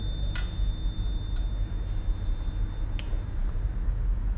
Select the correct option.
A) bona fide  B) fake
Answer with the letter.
A